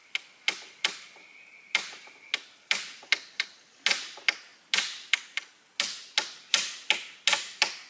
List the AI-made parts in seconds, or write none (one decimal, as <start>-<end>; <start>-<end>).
none